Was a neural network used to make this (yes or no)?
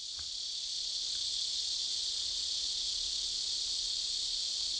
no